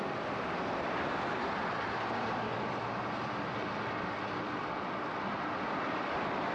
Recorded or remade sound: recorded